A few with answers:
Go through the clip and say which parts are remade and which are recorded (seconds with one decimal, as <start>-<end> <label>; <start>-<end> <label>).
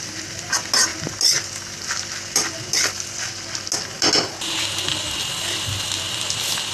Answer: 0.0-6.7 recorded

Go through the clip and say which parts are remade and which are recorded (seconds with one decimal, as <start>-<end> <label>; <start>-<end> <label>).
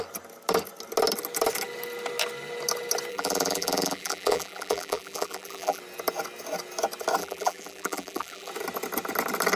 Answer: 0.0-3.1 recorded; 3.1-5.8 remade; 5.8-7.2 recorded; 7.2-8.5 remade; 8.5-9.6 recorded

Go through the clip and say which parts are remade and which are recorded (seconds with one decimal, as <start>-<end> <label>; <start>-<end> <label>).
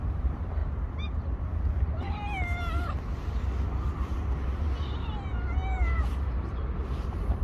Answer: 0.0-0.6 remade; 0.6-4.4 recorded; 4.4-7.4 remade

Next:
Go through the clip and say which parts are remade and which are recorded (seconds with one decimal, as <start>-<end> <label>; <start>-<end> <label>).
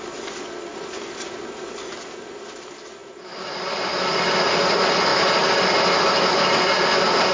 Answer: 0.0-0.7 recorded; 0.7-2.1 remade; 2.1-3.0 recorded; 3.0-4.3 remade; 4.3-7.3 recorded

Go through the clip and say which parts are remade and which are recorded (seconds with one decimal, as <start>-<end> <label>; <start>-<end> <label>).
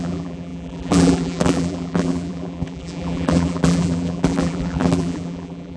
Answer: 0.0-5.8 remade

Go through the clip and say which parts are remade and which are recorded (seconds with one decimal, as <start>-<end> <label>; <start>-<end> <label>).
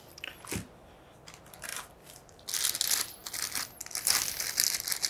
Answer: 0.0-1.7 recorded; 1.7-2.4 remade; 2.4-5.1 recorded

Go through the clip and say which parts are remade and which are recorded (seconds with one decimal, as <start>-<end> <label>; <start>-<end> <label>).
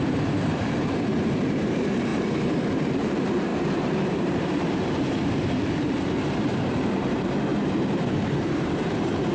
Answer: 0.0-7.5 remade; 7.5-8.3 recorded; 8.3-9.3 remade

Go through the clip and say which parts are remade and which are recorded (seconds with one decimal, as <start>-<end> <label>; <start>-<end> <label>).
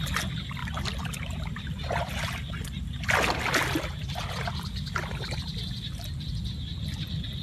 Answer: 0.0-7.4 recorded